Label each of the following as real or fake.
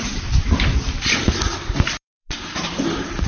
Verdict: fake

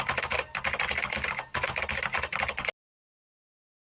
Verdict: real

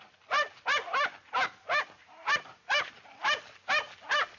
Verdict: real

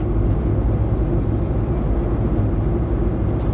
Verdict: real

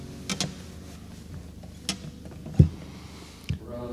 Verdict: real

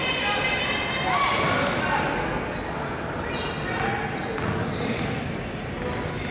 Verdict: real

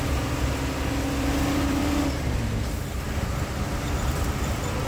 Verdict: fake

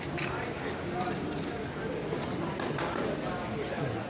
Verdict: real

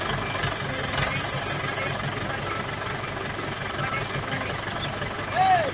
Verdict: real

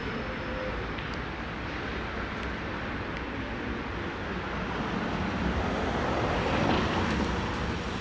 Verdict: real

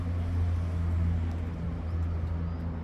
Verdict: real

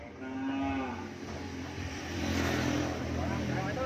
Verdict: real